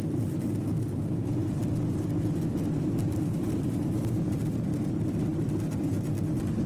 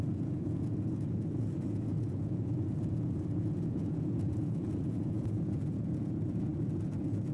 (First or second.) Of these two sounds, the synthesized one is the second